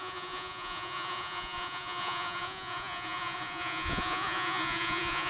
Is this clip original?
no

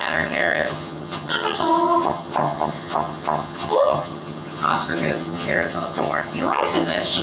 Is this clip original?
no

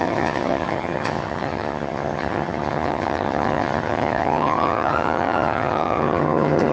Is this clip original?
no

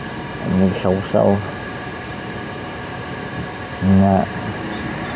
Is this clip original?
no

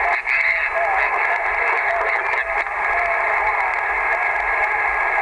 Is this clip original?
yes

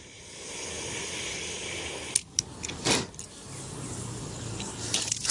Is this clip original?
yes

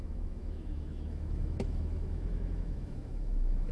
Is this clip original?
no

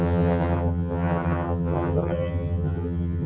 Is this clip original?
no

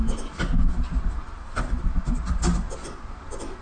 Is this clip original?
yes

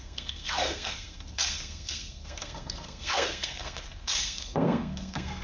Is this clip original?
no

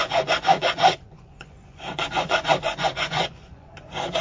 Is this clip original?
no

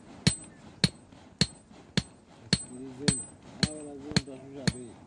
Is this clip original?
yes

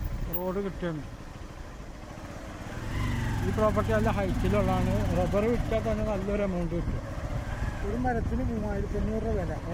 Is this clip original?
yes